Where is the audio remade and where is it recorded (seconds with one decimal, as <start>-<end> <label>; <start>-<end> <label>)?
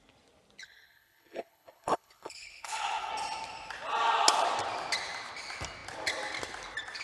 0.0-0.6 recorded; 0.6-3.1 remade; 3.1-7.0 recorded